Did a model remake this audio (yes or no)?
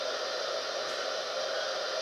no